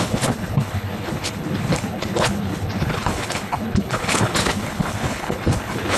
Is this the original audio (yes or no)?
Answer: no